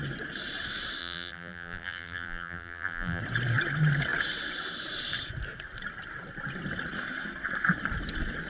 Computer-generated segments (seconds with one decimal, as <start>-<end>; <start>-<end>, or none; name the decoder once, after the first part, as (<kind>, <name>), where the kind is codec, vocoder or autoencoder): 1.0-3.2 (vocoder, BigVGAN v2)